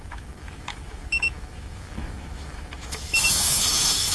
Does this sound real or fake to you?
fake